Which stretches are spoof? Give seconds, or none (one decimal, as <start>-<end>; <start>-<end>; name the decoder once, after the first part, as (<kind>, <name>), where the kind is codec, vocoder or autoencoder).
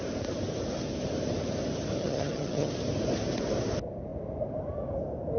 2.0-2.7 (vocoder, HiFi-GAN)